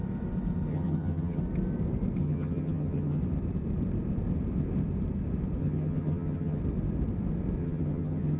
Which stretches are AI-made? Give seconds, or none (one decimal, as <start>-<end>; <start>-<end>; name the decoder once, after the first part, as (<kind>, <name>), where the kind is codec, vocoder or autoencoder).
0.7-1.4 (vocoder, HiFi-GAN); 2.2-3.2; 5.6-6.6; 7.6-8.4